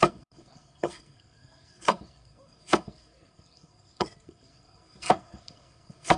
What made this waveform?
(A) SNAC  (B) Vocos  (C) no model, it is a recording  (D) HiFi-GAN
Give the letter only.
A